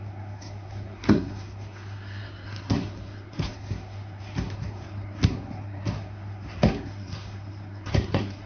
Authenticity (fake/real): fake